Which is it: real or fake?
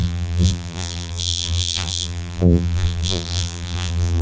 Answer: fake